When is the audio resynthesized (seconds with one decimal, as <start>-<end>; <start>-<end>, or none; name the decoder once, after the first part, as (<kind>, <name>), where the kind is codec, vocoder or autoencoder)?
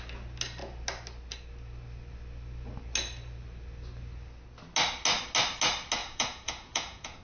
6.0-7.2 (vocoder, Vocos)